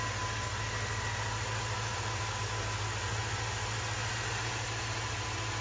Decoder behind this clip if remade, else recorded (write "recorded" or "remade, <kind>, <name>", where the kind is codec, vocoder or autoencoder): recorded